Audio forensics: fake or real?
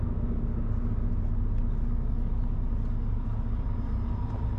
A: real